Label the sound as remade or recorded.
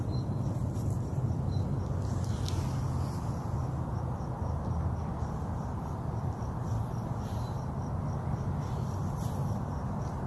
recorded